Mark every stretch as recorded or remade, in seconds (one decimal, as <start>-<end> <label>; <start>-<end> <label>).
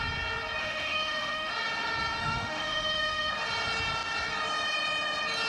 0.0-0.6 recorded; 0.6-1.5 remade; 1.5-2.2 recorded; 2.2-3.3 remade; 3.3-5.5 recorded